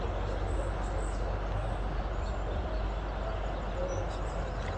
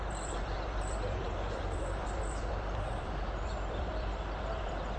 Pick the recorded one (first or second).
first